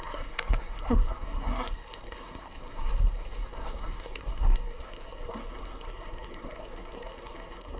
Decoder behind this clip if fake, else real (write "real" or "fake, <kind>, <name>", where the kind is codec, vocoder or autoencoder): fake, codec, SNAC